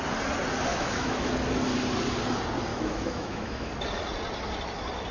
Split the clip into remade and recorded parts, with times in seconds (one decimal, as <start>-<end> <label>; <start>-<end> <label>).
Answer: 0.0-0.7 recorded; 0.7-1.3 remade; 1.3-2.7 recorded; 2.7-3.7 remade; 3.7-5.1 recorded